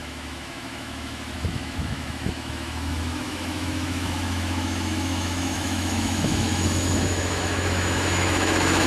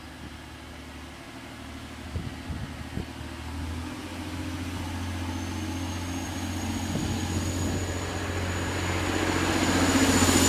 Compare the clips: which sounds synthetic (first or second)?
first